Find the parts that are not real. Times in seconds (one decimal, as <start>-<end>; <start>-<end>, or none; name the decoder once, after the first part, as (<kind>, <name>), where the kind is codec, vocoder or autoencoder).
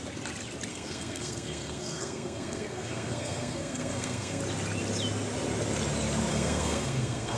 0.7-4.4 (codec, SNAC); 6.3-7.4